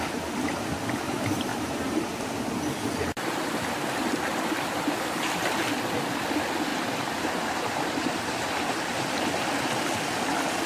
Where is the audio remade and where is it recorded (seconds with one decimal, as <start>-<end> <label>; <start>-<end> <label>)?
0.0-1.5 recorded; 1.5-2.4 remade; 2.4-6.7 recorded; 6.7-9.1 remade; 9.1-10.7 recorded